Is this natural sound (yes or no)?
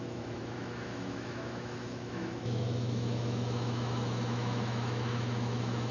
no